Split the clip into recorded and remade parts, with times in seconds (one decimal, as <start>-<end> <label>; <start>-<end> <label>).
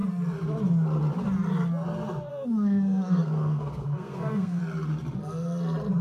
0.0-2.3 recorded; 2.3-4.6 remade; 4.6-6.0 recorded